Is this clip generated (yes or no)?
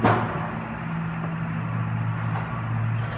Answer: no